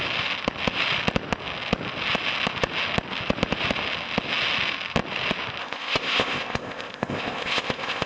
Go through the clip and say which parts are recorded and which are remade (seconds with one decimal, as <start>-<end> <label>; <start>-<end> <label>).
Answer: 0.0-5.6 recorded; 5.6-8.1 remade